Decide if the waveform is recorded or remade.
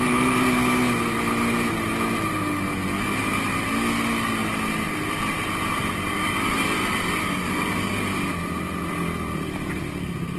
recorded